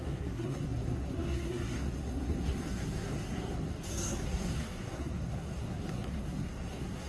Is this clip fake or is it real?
fake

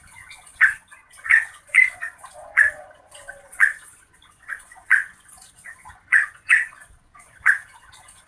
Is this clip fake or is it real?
fake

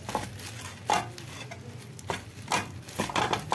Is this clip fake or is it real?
real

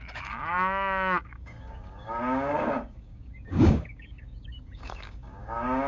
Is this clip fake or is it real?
fake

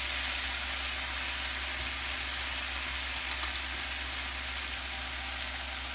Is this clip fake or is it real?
real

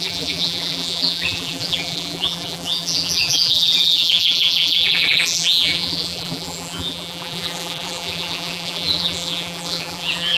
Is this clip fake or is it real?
fake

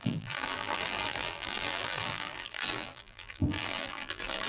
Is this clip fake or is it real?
fake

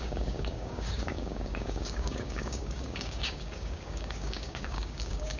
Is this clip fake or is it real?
fake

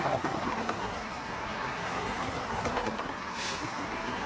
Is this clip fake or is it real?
fake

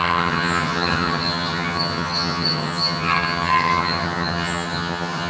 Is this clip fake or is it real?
fake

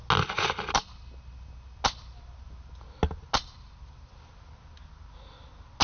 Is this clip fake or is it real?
real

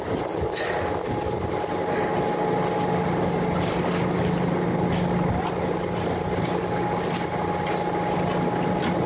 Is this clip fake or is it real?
real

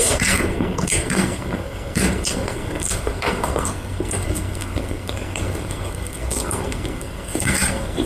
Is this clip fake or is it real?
fake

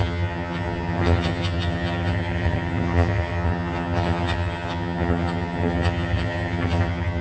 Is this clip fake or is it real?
fake